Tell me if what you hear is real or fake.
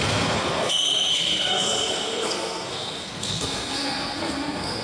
fake